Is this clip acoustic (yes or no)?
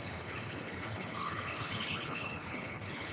no